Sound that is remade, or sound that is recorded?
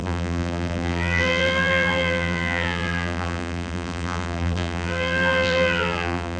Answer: remade